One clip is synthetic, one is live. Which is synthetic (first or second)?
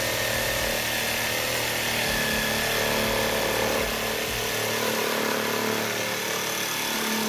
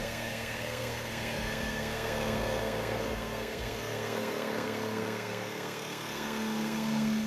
second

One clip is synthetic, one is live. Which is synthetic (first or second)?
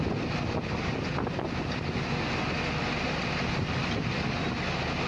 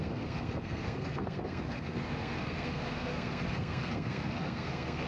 second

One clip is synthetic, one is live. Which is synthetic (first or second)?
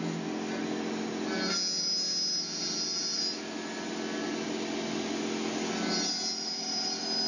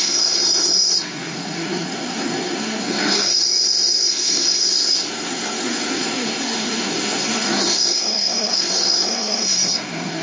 second